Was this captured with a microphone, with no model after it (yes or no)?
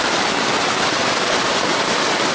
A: no